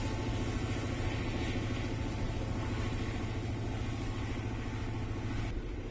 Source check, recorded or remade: recorded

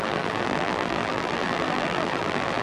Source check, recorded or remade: remade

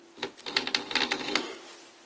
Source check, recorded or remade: recorded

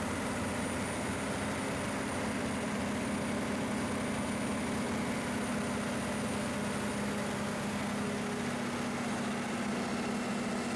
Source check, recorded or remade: recorded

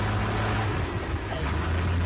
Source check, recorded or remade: recorded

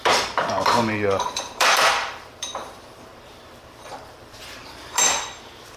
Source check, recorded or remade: remade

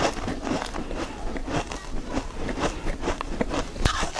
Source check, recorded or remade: remade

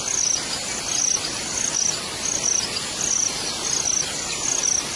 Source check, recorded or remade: recorded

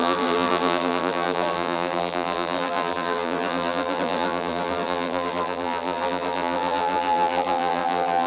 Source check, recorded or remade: remade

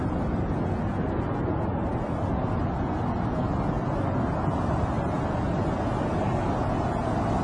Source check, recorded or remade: recorded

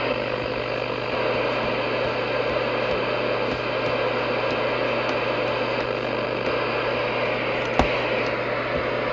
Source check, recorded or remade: recorded